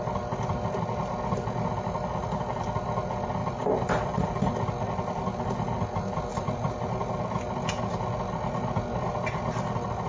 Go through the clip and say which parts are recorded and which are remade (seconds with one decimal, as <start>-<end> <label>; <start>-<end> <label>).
0.0-3.4 recorded; 3.4-5.7 remade; 5.7-6.3 recorded; 6.3-7.4 remade; 7.4-10.1 recorded